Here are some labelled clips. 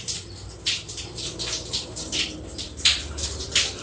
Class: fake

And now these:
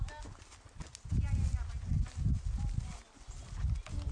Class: real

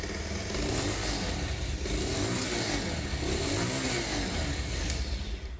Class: real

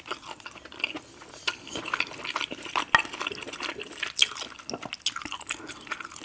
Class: real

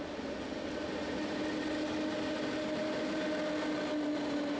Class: real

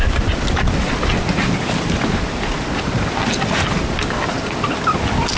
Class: real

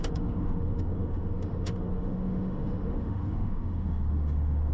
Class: fake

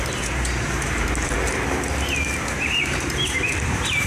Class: fake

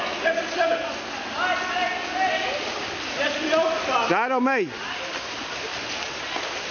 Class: real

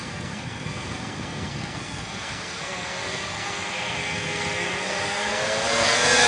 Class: fake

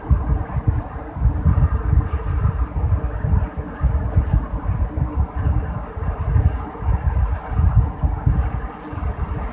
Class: fake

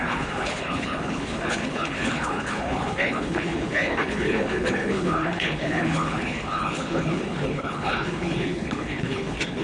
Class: fake